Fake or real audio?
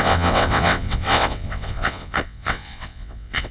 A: fake